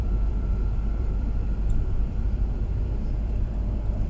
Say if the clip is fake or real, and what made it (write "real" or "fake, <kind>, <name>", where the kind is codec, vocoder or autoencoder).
fake, vocoder, BigVGAN v2